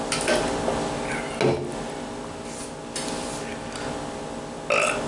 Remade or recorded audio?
recorded